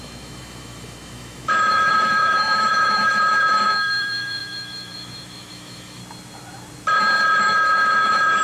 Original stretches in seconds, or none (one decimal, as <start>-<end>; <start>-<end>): 6.0-7.4